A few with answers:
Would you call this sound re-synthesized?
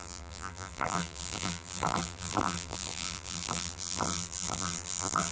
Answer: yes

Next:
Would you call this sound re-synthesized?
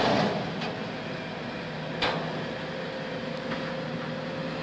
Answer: no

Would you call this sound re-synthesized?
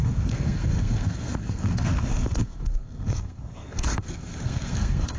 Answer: yes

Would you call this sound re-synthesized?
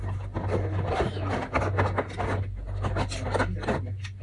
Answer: no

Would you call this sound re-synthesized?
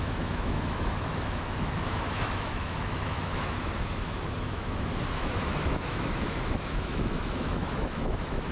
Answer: yes